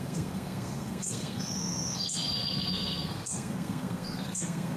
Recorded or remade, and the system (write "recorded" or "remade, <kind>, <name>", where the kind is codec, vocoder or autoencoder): remade, codec, SNAC